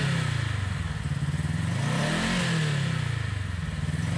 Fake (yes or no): no